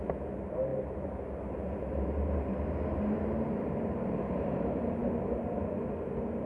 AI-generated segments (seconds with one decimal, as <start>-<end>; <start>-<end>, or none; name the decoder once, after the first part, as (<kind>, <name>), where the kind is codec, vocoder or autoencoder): 0.7-4.6 (vocoder, BigVGAN v2)